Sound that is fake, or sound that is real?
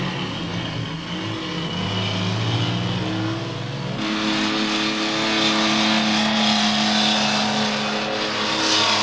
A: real